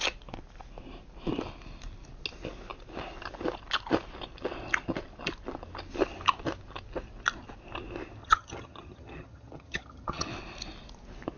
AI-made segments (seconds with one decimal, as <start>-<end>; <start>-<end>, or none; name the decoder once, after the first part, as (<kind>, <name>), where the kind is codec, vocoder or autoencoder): 8.2-10.3 (vocoder, HiFi-GAN)